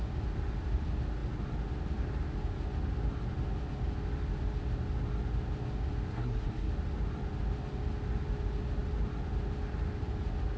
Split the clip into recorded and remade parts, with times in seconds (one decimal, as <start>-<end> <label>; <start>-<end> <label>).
0.0-6.1 recorded; 6.1-6.7 remade; 6.7-10.6 recorded